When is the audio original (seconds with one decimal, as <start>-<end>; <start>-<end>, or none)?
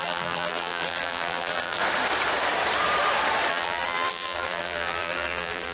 1.8-3.5